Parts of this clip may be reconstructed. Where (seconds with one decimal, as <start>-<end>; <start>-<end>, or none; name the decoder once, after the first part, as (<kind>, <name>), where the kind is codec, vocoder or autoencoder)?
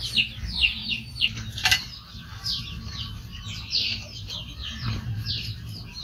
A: 0.8-2.6 (vocoder, BigVGAN v2); 4.6-5.3